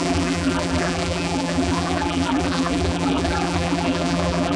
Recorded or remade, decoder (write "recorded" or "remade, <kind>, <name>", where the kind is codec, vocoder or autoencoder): remade, vocoder, BigVGAN v2